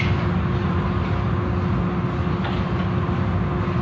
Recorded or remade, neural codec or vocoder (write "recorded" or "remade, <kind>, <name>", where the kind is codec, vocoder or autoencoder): recorded